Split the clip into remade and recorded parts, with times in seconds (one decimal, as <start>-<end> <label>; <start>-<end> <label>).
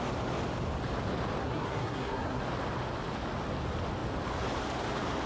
0.0-1.4 recorded; 1.4-2.4 remade; 2.4-5.3 recorded